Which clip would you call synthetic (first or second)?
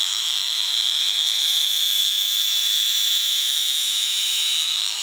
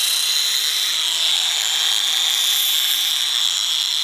first